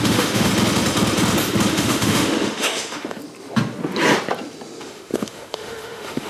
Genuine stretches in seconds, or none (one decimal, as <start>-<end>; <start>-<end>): 0.5-1.7; 3.2-4.8